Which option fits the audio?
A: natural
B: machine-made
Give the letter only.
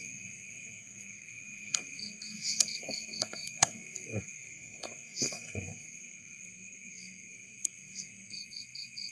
B